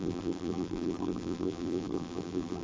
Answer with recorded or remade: remade